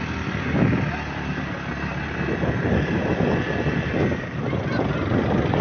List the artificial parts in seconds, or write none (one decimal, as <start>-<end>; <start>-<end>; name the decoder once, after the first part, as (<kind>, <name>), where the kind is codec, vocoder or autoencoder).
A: none